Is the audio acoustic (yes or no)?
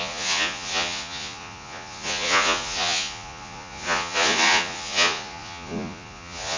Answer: no